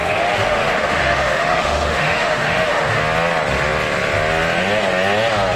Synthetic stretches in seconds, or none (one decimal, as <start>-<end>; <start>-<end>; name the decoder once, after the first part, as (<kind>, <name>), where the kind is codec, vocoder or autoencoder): 0.0-3.0 (autoencoder, DAC-VAE)